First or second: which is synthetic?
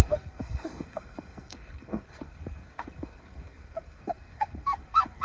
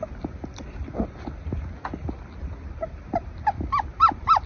first